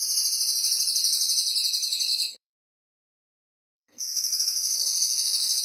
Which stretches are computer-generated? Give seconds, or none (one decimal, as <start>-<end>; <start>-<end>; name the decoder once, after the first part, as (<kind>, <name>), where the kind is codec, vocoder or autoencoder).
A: 2.1-5.6 (codec, SNAC)